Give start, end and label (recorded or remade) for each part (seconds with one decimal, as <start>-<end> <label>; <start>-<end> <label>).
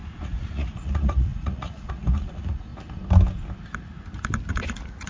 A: 0.0-2.7 remade; 2.7-4.5 recorded; 4.5-5.1 remade